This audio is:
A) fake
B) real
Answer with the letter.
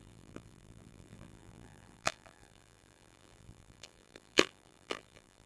A